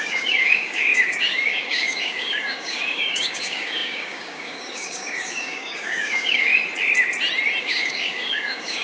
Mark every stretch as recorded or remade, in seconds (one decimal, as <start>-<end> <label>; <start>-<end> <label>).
0.0-6.5 remade; 6.5-7.6 recorded; 7.6-8.8 remade